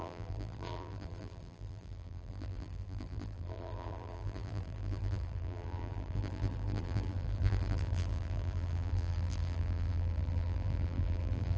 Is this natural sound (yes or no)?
no